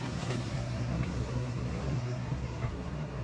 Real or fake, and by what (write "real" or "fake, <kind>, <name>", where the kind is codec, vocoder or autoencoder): fake, codec, SNAC